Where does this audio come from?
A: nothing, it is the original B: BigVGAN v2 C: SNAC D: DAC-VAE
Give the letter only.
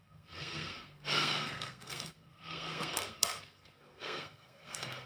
C